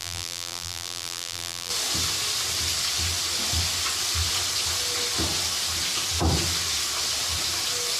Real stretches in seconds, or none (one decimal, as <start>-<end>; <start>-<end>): 1.7-8.0